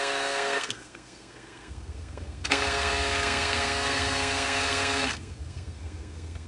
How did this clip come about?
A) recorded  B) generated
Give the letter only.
B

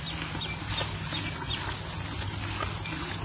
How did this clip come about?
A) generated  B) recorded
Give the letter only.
B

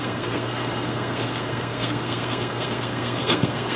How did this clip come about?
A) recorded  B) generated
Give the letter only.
B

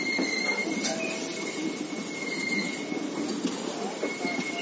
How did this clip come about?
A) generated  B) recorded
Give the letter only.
B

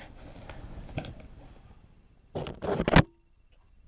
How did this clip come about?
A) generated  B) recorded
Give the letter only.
B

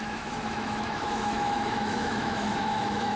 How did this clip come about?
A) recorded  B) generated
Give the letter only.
B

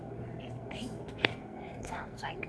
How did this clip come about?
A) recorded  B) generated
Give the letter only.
B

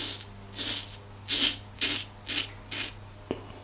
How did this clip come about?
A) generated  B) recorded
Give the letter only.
B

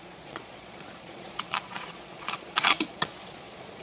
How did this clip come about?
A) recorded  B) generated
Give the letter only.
B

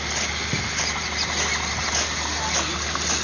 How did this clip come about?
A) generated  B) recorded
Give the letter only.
B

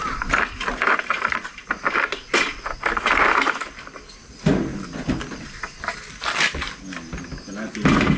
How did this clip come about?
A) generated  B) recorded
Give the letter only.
B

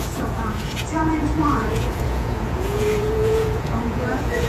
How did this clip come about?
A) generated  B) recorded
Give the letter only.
A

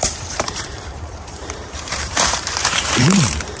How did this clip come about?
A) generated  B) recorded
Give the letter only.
A